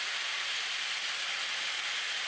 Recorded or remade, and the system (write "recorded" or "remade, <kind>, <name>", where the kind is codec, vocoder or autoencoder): recorded